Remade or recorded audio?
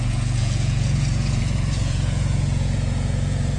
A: remade